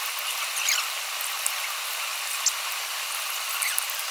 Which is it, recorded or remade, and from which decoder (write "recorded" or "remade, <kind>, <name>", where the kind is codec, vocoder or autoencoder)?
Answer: recorded